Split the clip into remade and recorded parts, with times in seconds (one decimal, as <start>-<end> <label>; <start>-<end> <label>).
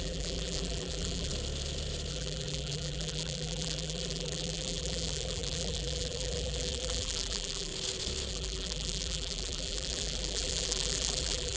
0.0-1.3 remade; 1.3-2.1 recorded; 2.1-7.7 remade; 7.7-8.3 recorded; 8.3-11.6 remade